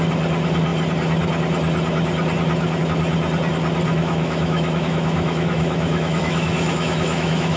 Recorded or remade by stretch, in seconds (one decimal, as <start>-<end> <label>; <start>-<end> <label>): 0.0-3.9 recorded; 3.9-7.6 remade